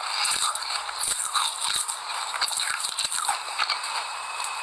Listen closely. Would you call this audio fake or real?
fake